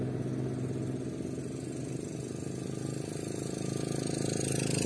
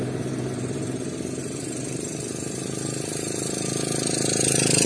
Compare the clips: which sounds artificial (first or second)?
second